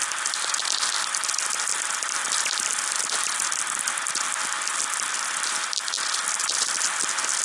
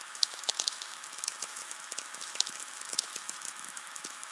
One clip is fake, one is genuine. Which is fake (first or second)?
second